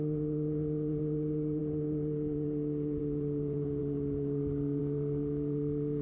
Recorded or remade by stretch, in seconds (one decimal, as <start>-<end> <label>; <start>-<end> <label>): 0.0-6.0 recorded